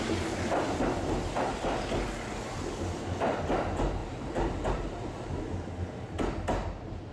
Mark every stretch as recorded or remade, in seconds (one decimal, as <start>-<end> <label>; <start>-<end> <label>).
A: 0.0-4.0 recorded; 4.0-5.4 remade; 5.4-7.1 recorded